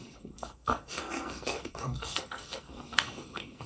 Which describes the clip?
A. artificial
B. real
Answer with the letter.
A